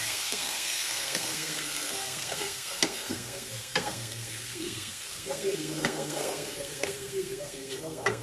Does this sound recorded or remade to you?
remade